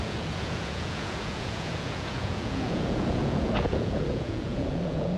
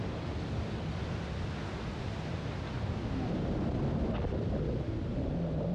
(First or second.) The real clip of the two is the second